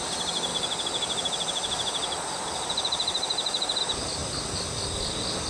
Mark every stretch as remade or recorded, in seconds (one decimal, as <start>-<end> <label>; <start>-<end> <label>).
0.0-5.5 recorded